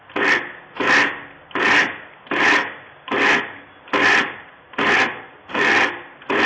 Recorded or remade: recorded